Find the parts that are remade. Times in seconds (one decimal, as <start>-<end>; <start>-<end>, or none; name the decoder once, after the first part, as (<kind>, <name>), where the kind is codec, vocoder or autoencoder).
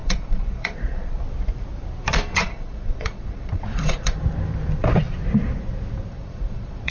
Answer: 0.0-1.2 (vocoder, Vocos); 2.4-4.2; 6.1-6.9